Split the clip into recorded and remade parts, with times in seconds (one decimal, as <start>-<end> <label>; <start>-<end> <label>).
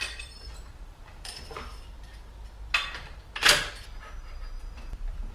0.0-1.7 remade; 1.7-4.6 recorded; 4.6-5.3 remade